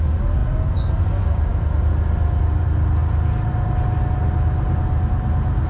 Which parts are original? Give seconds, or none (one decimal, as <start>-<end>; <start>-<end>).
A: 0.0-5.7